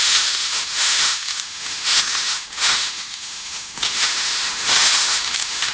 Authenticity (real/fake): fake